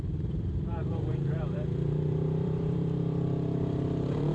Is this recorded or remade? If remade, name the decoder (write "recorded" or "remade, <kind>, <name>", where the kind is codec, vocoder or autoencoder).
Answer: remade, vocoder, BigVGAN v2